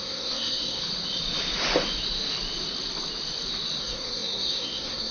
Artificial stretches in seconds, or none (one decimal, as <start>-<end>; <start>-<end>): 0.0-0.8; 3.8-5.1